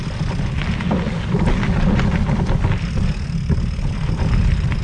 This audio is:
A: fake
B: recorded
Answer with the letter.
B